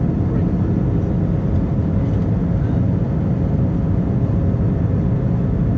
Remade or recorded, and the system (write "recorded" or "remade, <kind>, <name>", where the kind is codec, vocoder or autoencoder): recorded